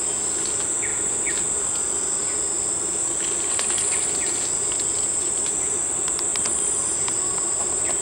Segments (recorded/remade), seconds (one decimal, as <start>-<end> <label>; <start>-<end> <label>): 0.0-8.0 recorded